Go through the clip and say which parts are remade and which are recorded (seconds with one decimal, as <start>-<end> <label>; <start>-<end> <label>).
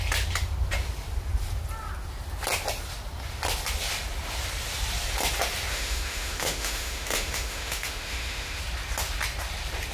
0.0-5.7 recorded; 5.7-8.6 remade; 8.6-9.9 recorded